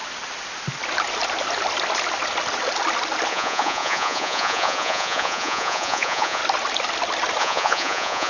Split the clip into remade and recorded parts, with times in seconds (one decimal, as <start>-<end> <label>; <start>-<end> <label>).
0.0-3.3 recorded; 3.3-6.4 remade; 6.4-7.4 recorded; 7.4-8.3 remade